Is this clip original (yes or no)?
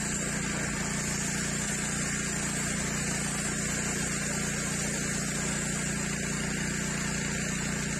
yes